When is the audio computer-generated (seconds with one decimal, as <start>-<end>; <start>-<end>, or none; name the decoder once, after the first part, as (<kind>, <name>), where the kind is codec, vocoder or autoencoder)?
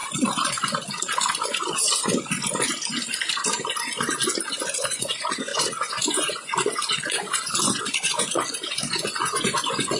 4.5-10.0 (vocoder, Vocos)